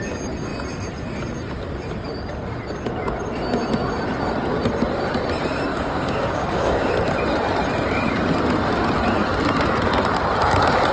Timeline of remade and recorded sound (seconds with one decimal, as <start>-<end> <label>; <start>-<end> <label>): 0.0-5.7 recorded; 5.7-6.9 remade; 6.9-10.9 recorded